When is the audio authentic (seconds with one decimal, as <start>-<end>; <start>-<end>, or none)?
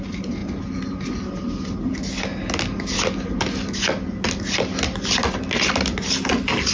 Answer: 0.0-6.7